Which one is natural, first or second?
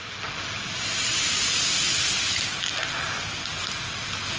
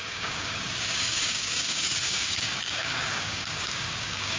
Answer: first